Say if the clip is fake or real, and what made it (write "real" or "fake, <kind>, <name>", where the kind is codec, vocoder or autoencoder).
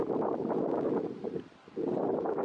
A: real